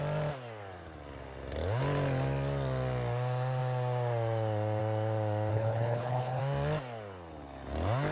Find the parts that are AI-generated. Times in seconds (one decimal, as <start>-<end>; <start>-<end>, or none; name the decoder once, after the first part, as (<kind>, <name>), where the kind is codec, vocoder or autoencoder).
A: 5.5-6.4 (codec, HILCodec)